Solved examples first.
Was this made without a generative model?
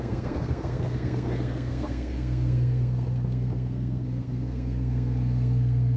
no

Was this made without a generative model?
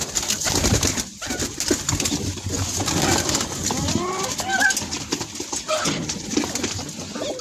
yes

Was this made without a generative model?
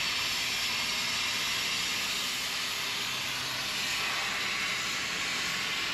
yes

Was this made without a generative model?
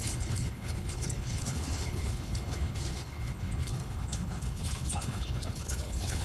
no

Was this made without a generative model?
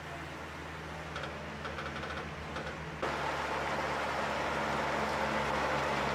yes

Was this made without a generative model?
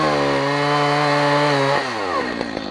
yes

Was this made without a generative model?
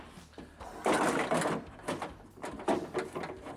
yes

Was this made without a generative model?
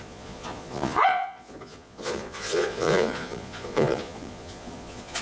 no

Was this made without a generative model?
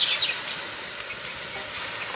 yes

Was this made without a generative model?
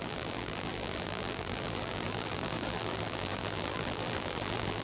no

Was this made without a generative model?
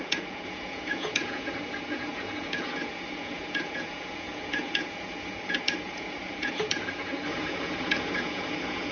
no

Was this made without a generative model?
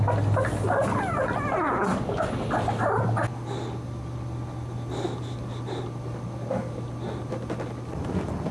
yes